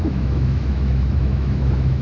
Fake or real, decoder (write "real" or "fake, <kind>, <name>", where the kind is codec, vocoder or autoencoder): fake, autoencoder, DAC-VAE